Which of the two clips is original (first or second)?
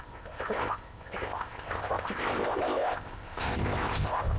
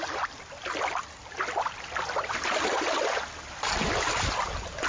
second